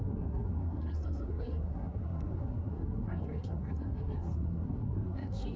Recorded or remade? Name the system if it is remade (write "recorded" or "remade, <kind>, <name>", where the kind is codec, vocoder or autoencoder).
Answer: remade, codec, SNAC